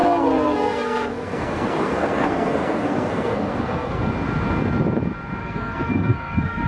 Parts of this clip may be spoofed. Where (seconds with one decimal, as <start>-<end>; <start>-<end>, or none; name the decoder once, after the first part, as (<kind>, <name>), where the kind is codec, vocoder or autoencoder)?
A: 0.0-4.0 (codec, SNAC); 5.4-6.7

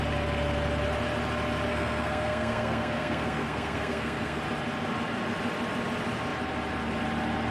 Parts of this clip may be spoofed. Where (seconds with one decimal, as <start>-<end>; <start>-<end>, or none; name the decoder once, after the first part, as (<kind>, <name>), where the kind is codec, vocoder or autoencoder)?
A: 1.7-4.4 (codec, SNAC)

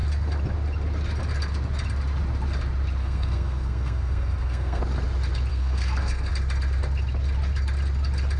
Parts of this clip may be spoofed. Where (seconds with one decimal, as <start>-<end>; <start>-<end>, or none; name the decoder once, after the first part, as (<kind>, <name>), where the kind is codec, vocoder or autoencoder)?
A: 3.0-4.8 (codec, SNAC); 5.5-6.3

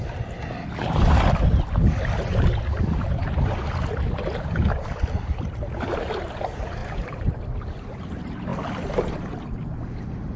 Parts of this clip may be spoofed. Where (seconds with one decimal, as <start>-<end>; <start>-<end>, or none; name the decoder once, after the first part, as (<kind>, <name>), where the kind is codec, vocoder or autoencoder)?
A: none

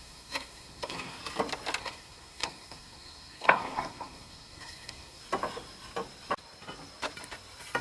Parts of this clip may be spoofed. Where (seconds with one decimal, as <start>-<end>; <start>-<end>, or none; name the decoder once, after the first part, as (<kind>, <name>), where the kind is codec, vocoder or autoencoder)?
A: 0.0-1.2 (codec, SNAC); 1.8-5.2